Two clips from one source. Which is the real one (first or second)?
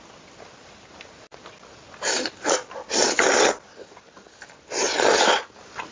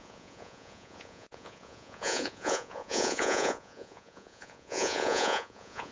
first